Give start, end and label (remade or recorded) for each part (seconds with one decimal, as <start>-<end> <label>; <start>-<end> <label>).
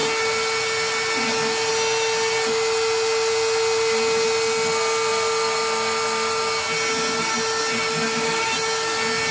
0.0-9.3 recorded